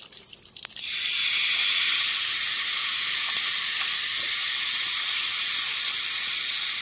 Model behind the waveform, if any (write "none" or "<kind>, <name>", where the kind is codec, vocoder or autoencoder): none